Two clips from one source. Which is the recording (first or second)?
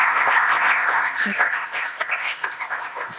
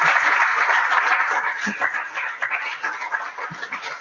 second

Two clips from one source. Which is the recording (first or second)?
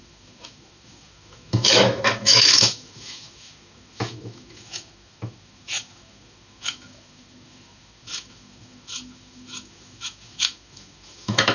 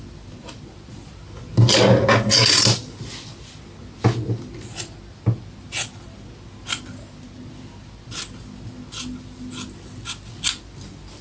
second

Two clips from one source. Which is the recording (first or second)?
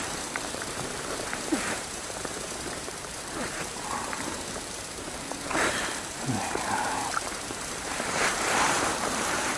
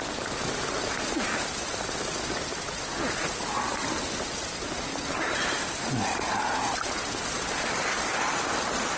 second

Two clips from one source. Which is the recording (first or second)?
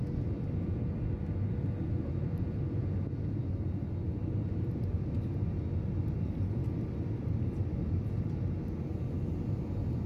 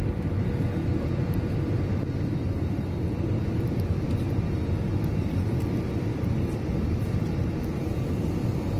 first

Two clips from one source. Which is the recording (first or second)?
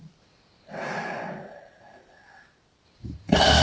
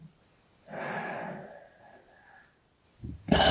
second